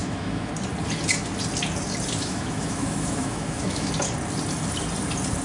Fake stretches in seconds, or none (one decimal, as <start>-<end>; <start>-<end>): 0.0-0.5; 2.2-3.9